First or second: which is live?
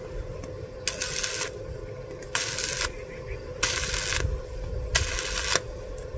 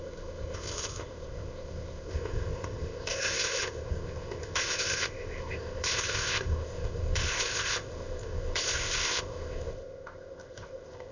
first